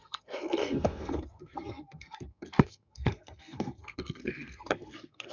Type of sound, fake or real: fake